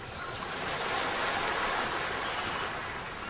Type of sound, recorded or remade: recorded